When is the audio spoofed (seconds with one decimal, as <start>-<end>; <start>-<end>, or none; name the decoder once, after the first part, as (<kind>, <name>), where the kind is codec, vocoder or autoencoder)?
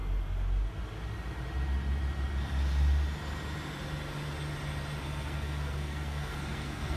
5.0-7.0 (codec, SNAC)